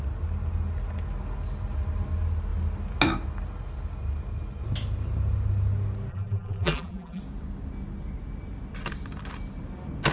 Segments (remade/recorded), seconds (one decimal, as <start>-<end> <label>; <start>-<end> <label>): 0.0-6.1 recorded; 6.1-7.2 remade; 7.2-10.1 recorded